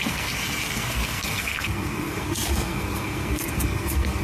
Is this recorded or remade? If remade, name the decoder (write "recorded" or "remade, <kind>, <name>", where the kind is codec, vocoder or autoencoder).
remade, codec, SNAC